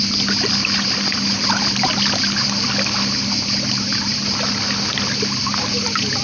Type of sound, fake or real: real